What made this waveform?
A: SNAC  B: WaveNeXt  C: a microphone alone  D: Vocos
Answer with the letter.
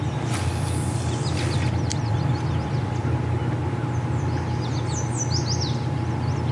C